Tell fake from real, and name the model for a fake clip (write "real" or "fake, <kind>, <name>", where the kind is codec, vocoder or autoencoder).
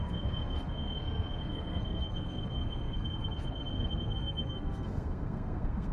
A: fake, codec, SNAC